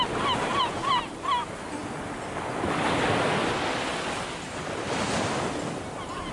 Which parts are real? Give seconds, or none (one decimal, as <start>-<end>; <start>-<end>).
0.0-0.5; 1.0-6.3